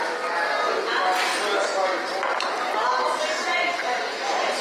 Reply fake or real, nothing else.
real